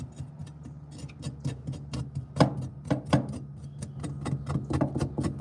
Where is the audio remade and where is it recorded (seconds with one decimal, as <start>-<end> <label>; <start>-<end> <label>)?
0.0-5.4 recorded

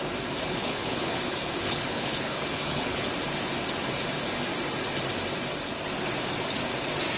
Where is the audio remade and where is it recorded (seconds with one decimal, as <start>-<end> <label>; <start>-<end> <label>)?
0.0-0.6 recorded; 0.6-3.0 remade; 3.0-7.2 recorded

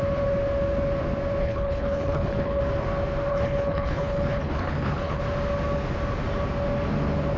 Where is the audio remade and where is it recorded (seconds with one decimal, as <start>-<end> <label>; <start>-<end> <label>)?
0.0-1.4 recorded; 1.4-2.6 remade; 2.6-3.3 recorded; 3.3-5.2 remade; 5.2-7.4 recorded